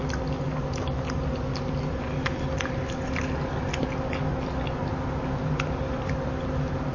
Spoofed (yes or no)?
no